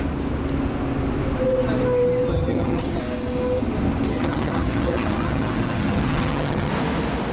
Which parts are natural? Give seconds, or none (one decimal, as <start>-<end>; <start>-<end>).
0.0-2.3; 3.0-4.1; 6.7-7.3